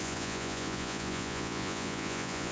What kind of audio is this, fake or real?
fake